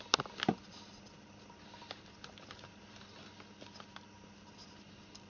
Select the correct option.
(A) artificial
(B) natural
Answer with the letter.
B